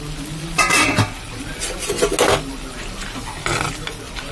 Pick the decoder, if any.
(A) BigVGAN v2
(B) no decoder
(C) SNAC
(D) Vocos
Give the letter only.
B